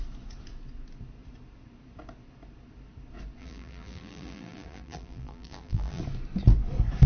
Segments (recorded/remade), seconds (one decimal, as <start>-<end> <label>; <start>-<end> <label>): 0.0-3.4 recorded; 3.4-6.0 remade; 6.0-7.1 recorded